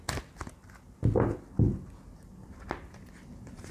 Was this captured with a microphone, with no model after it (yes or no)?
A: yes